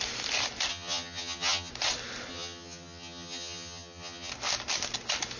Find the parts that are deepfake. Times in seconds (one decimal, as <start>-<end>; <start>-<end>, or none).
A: 0.7-1.7; 2.3-4.3